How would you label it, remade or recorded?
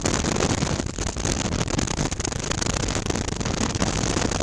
recorded